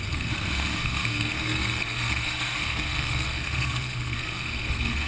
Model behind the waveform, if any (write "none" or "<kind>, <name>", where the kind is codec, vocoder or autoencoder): codec, SNAC